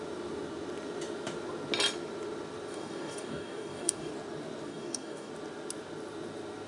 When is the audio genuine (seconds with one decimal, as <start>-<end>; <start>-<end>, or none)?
0.0-2.7; 4.1-4.7; 5.3-6.7